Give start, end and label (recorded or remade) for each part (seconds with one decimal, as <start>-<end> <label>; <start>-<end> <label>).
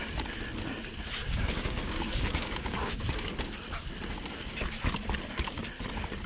0.0-1.2 recorded; 1.2-3.1 remade; 3.1-6.3 recorded